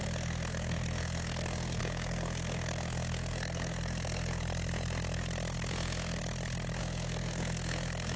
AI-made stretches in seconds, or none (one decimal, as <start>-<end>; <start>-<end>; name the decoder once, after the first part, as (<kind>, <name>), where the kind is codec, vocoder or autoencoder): 0.0-4.4 (codec, SNAC); 5.7-6.2; 6.8-8.2